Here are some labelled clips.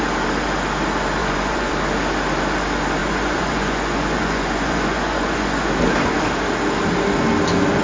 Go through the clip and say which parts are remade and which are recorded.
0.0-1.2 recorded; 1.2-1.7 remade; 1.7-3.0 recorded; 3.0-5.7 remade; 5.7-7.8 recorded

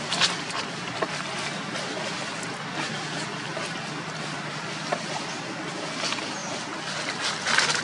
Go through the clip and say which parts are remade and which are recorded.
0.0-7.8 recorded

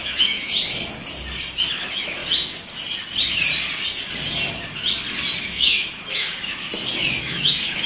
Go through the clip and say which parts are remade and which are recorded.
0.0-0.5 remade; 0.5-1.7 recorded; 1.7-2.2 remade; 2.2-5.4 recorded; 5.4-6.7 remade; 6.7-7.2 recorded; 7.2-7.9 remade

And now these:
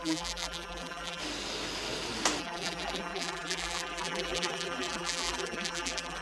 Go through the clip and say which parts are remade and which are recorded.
0.0-1.2 remade; 1.2-2.4 recorded; 2.4-6.2 remade